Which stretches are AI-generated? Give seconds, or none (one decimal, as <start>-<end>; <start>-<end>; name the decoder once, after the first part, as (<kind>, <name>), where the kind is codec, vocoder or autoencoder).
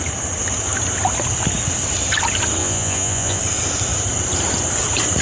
2.6-3.4 (vocoder, Vocos)